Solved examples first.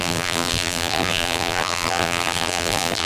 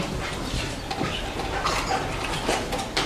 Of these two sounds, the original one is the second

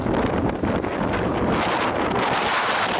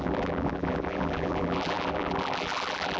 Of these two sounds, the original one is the first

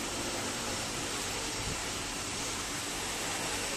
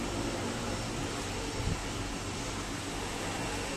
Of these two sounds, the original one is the second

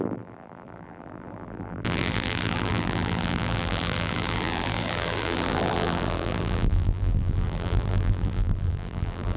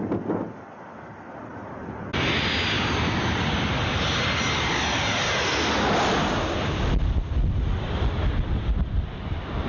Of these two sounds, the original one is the second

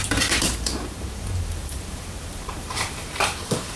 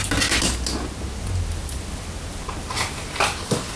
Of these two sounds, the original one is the second